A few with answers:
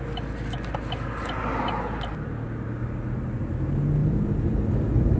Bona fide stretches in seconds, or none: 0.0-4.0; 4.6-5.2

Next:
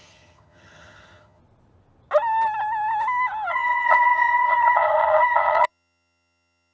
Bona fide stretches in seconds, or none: 1.4-3.5

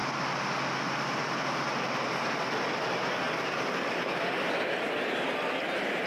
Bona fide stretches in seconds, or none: 0.0-1.0